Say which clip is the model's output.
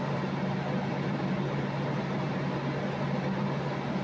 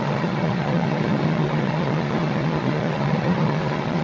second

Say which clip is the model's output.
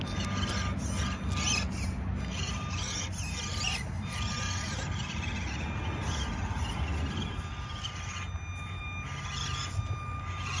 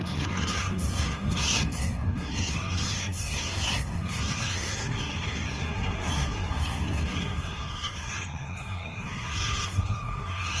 second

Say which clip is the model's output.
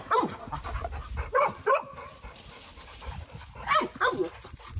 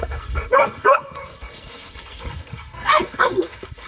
second